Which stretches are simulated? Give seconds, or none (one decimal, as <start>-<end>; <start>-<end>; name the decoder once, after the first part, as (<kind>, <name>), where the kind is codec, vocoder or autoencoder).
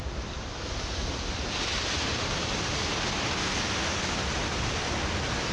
none